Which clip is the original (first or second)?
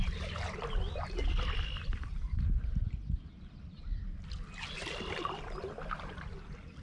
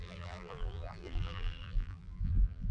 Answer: first